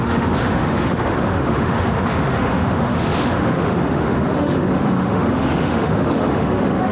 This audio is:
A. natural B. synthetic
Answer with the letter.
B